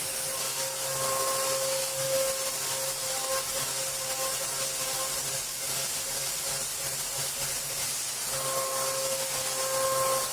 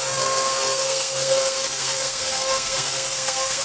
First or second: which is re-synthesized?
second